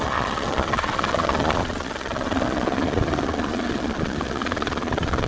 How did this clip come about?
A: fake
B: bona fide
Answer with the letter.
A